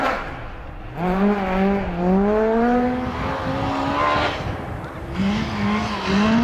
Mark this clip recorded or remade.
recorded